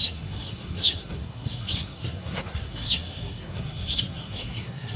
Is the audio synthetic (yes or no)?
yes